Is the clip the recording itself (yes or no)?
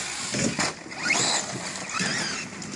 yes